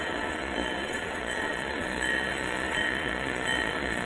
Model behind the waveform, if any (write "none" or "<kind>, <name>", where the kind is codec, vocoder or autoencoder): vocoder, Vocos